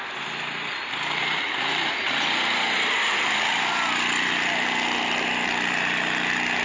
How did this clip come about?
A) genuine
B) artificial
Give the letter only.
B